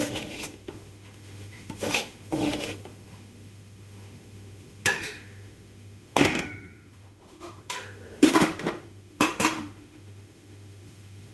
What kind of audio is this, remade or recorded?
remade